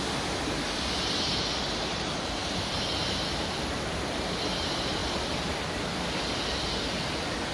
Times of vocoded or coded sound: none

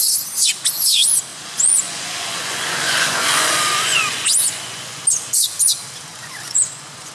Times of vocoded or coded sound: 1.3-5.0 (vocoder, Vocos); 6.1-7.1

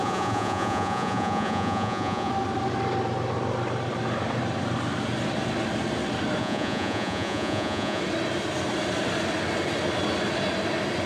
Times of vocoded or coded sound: 0.0-2.3 (vocoder, Vocos); 6.4-8.0